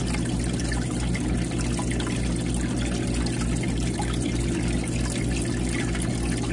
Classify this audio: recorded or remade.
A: recorded